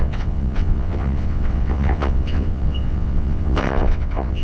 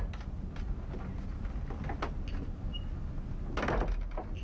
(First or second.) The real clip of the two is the second